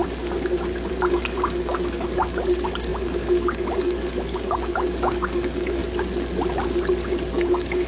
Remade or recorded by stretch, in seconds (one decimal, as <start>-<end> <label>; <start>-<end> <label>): 0.0-0.9 recorded; 0.9-5.8 remade; 5.8-7.3 recorded; 7.3-7.9 remade